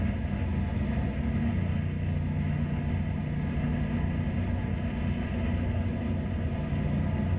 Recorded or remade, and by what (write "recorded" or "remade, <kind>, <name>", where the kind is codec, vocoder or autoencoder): recorded